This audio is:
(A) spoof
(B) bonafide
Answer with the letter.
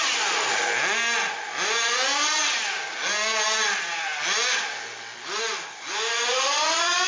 B